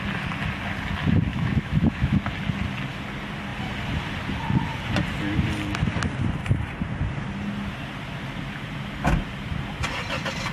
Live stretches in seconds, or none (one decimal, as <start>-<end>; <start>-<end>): 0.0-1.3; 2.2-10.5